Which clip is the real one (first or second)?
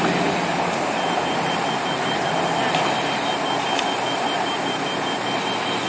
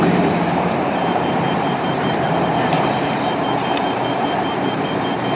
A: first